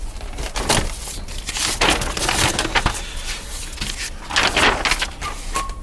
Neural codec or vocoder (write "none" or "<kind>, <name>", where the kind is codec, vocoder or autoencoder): none